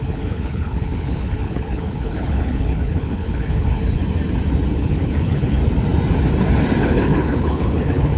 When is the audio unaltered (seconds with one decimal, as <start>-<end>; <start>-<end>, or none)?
4.0-4.7; 5.6-6.8